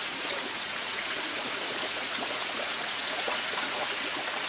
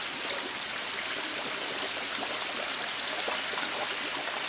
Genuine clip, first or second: second